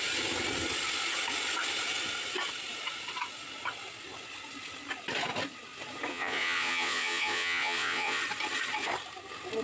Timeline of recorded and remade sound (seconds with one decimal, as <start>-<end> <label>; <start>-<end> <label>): 0.0-6.1 recorded; 6.1-8.2 remade; 8.2-9.6 recorded